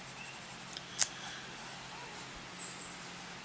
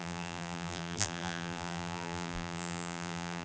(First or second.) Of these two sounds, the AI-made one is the second